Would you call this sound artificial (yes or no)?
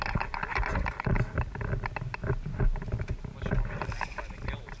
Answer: no